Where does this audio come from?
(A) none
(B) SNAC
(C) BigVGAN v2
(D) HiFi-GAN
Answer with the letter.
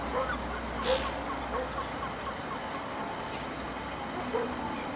A